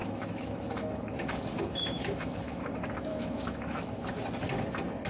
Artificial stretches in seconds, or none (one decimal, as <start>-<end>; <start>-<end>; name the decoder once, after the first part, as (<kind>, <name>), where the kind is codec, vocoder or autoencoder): 0.0-2.7 (autoencoder, DAC-VAE); 3.1-4.1